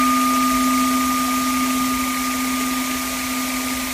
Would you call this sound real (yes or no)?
yes